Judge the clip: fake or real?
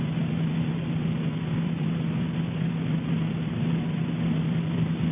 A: real